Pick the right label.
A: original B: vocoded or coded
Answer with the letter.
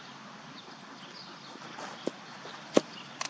A